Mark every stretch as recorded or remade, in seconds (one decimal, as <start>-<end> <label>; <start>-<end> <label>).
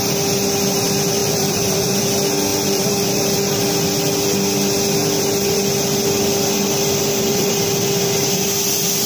0.0-1.2 recorded; 1.2-2.0 remade; 2.0-2.5 recorded; 2.5-3.6 remade; 3.6-7.0 recorded; 7.0-7.5 remade; 7.5-9.1 recorded